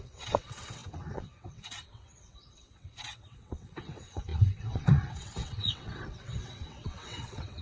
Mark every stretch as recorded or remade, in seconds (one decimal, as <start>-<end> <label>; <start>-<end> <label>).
0.0-7.6 remade